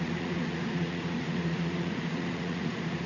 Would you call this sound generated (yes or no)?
yes